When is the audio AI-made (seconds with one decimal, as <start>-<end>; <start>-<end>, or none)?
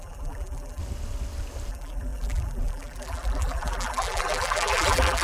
0.0-0.8; 1.7-5.2